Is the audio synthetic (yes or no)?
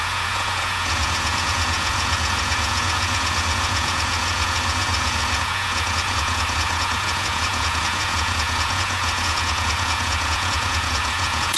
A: yes